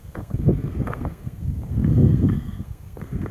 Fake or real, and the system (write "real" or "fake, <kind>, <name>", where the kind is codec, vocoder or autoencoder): fake, codec, SNAC